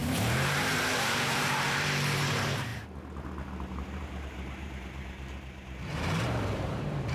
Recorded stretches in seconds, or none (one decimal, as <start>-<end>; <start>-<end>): 2.7-3.7